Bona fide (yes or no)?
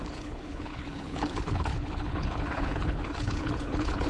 no